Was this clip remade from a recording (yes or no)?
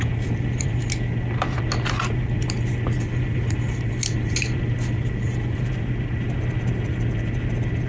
no